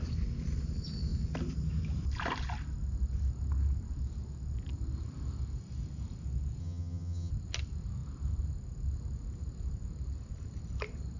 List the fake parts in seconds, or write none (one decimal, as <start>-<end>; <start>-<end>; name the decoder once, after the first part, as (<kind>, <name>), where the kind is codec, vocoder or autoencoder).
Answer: 6.6-7.3 (vocoder, HiFi-GAN)